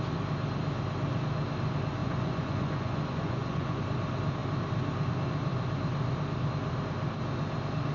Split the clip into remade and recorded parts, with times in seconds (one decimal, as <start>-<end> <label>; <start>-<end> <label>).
0.0-2.0 recorded; 2.0-3.8 remade; 3.8-7.9 recorded